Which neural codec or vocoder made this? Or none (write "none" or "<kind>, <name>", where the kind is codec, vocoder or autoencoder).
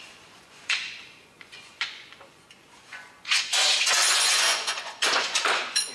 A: vocoder, Vocos